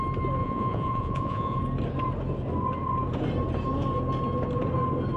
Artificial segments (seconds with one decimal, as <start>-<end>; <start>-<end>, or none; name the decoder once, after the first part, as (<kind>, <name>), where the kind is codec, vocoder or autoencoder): 0.4-1.6 (vocoder, Vocos)

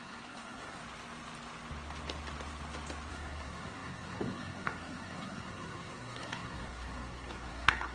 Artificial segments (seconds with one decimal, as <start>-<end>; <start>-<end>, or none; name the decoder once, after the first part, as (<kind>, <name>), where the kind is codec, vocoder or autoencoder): 0.0-0.8 (codec, SNAC); 3.1-7.9